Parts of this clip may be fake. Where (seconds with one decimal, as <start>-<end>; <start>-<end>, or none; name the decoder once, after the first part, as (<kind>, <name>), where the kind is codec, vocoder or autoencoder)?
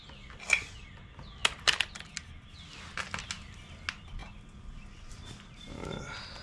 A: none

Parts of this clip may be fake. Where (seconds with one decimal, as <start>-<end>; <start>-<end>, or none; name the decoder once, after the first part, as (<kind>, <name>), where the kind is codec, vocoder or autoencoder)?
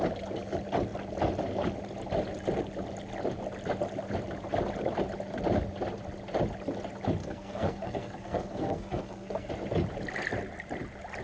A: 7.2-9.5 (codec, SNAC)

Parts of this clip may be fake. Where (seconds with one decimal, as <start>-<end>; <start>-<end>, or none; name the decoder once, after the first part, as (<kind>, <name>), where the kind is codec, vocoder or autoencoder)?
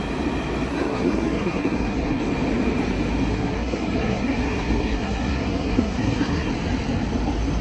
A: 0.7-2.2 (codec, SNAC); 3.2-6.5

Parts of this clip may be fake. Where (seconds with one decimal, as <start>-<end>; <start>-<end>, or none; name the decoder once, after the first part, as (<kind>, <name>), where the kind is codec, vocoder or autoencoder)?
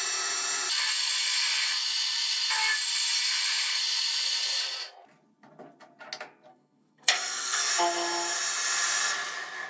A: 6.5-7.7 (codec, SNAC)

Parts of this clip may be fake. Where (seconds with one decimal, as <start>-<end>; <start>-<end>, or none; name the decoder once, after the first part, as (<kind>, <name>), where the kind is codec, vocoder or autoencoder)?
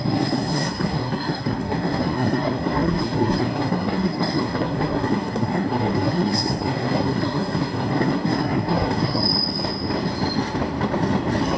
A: 0.0-9.2 (codec, SNAC)